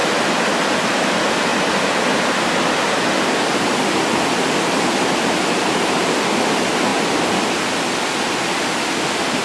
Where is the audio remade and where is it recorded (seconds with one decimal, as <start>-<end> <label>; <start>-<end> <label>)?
0.0-0.5 remade; 0.5-1.5 recorded; 1.5-6.5 remade; 6.5-9.4 recorded